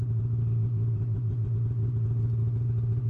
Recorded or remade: recorded